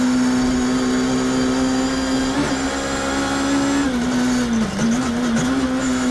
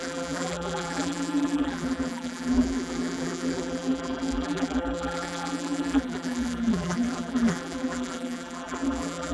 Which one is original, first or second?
first